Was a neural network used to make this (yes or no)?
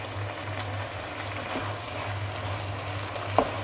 no